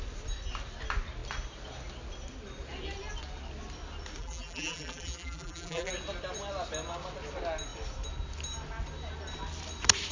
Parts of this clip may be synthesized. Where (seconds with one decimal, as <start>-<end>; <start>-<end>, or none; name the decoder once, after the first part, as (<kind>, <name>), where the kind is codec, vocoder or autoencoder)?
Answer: 4.2-5.9 (vocoder, BigVGAN v2)